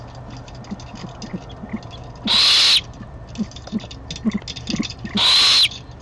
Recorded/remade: recorded